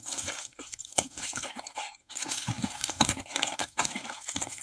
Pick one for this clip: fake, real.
fake